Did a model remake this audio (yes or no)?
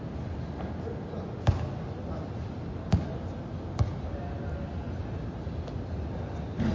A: no